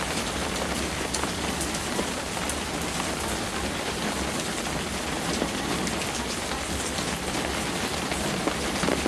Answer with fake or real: real